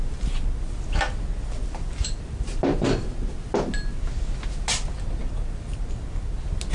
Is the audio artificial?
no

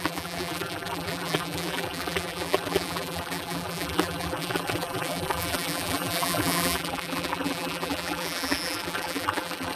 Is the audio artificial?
yes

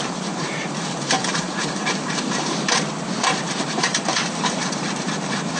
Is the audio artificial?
yes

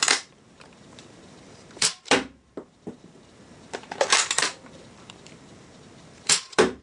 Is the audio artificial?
yes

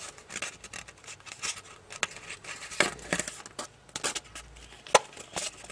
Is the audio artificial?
no